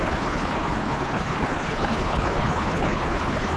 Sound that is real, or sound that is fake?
fake